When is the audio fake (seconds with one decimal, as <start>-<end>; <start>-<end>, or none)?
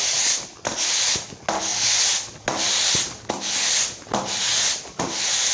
none